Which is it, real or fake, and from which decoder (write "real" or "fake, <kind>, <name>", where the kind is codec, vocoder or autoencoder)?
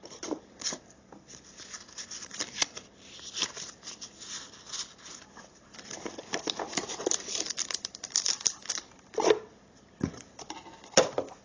fake, vocoder, BigVGAN v2